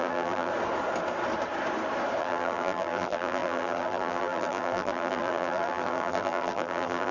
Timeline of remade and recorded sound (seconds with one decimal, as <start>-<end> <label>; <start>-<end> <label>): 0.0-0.5 remade; 0.5-2.2 recorded; 2.2-7.1 remade